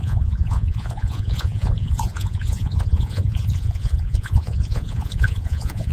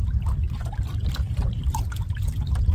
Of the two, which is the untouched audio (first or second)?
second